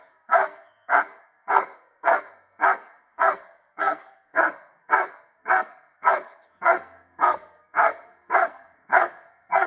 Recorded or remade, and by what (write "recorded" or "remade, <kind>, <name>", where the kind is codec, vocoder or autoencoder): remade, codec, SNAC